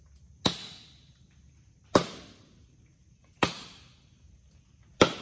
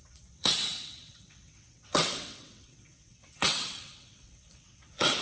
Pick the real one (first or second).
first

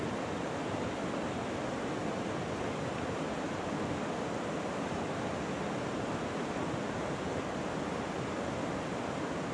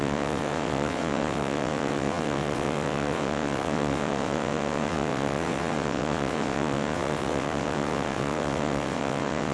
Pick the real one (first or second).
first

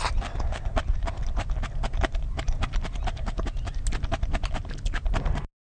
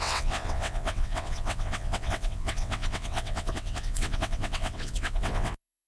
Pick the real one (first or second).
first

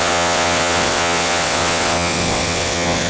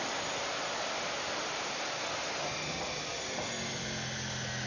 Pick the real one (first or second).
second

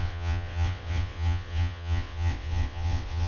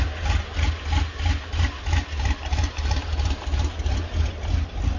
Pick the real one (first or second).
second